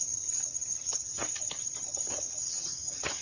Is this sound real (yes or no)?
no